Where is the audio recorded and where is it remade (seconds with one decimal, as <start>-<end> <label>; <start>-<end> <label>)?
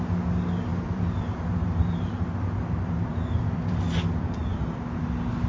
0.0-0.7 recorded; 0.7-4.0 remade; 4.0-5.5 recorded